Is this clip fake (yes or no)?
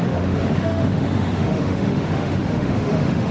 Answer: yes